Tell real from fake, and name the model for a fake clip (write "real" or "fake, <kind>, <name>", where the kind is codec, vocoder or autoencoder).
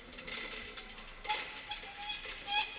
real